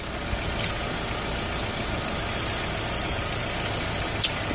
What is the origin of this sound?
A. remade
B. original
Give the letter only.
B